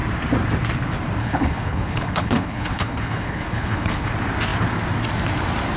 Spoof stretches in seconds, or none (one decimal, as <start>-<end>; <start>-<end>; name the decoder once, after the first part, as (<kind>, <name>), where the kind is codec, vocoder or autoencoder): 1.2-4.1 (codec, HILCodec)